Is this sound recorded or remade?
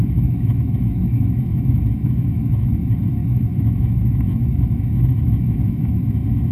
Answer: remade